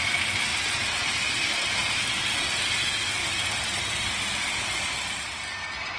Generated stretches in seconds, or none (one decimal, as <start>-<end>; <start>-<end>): none